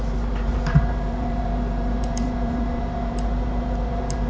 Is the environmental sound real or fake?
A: fake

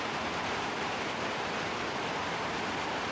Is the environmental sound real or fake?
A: real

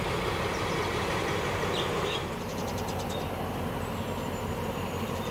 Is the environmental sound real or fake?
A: fake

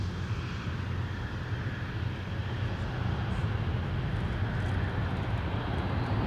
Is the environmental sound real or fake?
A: real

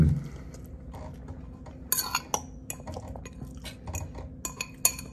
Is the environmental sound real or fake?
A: real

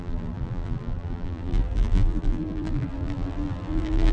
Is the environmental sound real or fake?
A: fake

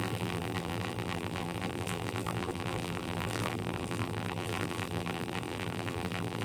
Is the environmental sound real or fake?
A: fake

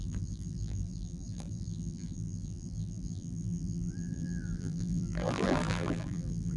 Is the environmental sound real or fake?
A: fake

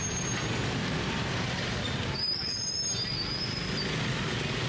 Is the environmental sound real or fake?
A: real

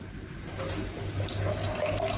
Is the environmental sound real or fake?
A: real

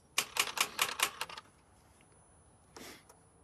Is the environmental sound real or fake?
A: real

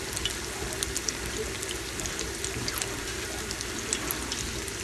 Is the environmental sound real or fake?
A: real